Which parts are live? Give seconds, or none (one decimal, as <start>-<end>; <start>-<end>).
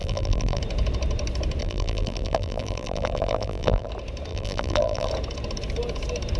0.6-1.6; 3.9-4.3; 5.1-6.4